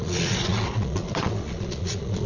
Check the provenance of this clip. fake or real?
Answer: fake